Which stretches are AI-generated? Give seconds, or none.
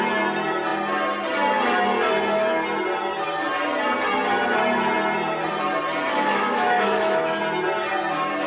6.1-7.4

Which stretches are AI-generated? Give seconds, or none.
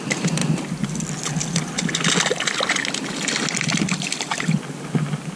0.0-0.4; 3.6-5.4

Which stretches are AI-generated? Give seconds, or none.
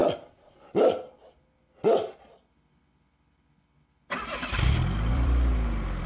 0.0-4.5; 5.1-6.1